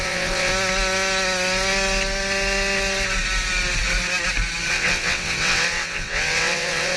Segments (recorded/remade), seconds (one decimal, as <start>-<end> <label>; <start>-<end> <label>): 0.0-0.5 remade; 0.5-4.7 recorded; 4.7-7.0 remade